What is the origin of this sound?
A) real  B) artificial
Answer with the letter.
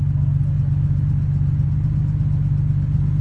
A